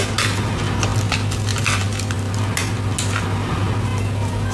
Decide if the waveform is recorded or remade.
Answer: recorded